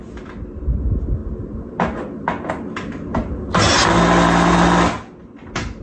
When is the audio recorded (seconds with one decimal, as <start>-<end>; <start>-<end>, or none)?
0.0-5.8